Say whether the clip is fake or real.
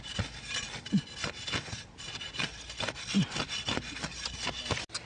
real